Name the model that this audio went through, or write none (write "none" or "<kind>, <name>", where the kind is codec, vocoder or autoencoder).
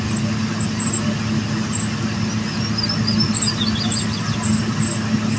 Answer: none